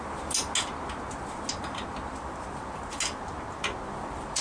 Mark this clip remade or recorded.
recorded